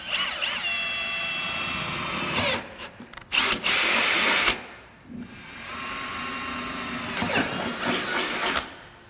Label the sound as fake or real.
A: real